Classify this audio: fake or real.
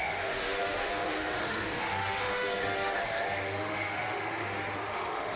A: fake